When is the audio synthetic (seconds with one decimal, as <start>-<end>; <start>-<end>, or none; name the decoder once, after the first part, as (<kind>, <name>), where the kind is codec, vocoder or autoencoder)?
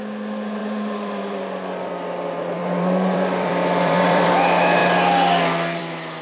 0.6-4.3 (vocoder, BigVGAN v2)